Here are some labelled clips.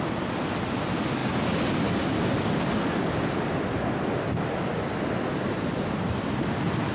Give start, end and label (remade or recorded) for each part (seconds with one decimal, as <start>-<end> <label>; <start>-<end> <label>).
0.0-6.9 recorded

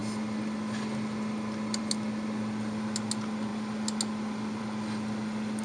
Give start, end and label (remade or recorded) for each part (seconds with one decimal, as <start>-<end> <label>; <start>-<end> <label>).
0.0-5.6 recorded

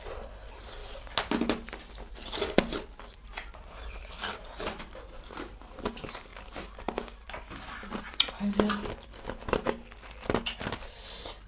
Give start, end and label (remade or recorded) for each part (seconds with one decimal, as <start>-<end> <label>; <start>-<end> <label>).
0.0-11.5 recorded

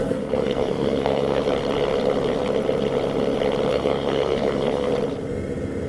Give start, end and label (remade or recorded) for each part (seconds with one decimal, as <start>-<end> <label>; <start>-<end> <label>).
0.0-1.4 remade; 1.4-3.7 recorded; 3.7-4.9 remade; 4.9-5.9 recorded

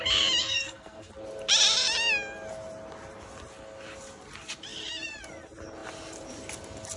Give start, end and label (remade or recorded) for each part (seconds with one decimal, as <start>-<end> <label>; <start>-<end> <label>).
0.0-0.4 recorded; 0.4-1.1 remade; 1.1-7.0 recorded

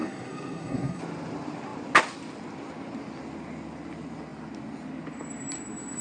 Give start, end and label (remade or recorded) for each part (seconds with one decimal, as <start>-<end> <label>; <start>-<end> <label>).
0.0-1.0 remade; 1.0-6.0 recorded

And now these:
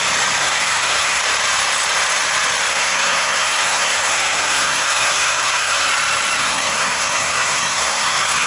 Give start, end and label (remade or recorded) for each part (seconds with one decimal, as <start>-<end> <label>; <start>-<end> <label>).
0.0-0.4 recorded; 0.4-1.2 remade; 1.2-2.7 recorded; 2.7-5.9 remade; 5.9-6.4 recorded; 6.4-8.5 remade